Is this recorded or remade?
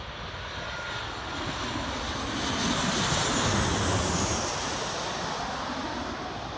recorded